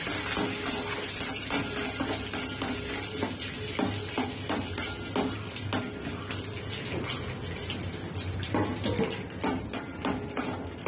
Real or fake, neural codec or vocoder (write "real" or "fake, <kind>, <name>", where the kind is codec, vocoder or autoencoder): real